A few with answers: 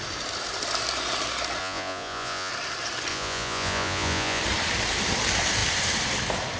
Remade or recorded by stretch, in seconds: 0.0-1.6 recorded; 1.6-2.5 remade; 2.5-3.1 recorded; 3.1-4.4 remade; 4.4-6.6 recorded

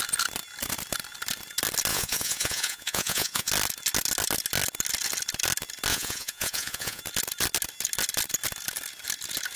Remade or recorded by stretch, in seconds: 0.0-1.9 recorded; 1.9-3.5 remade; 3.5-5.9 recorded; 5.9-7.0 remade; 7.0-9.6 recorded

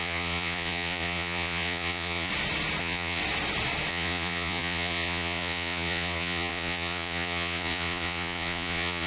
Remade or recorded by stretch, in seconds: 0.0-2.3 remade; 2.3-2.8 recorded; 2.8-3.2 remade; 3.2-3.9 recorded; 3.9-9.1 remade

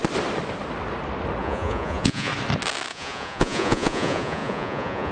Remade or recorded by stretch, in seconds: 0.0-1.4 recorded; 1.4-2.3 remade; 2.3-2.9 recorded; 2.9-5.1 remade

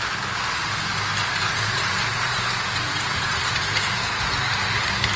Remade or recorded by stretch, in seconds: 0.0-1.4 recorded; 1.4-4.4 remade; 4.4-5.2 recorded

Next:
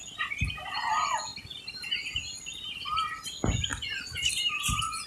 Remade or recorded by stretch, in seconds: 0.0-3.7 recorded; 3.7-4.3 remade; 4.3-5.1 recorded

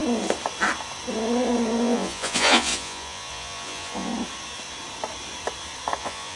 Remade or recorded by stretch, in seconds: 0.0-1.8 recorded; 1.8-4.1 remade; 4.1-6.0 recorded; 6.0-6.4 remade

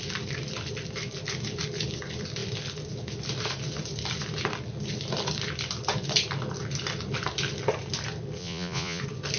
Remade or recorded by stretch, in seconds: 0.0-8.4 recorded; 8.4-9.0 remade; 9.0-9.4 recorded